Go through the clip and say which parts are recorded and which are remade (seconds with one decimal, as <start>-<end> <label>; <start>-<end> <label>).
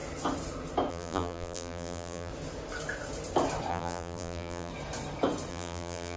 0.0-0.9 recorded; 0.9-2.3 remade; 2.3-3.7 recorded; 3.7-4.7 remade; 4.7-5.5 recorded; 5.5-6.2 remade